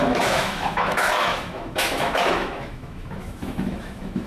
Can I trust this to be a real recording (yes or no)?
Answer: no